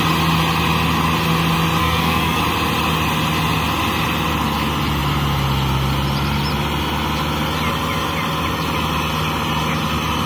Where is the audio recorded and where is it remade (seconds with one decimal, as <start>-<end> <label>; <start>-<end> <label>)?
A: 0.0-1.8 recorded; 1.8-2.4 remade; 2.4-10.3 recorded